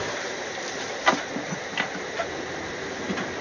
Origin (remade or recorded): recorded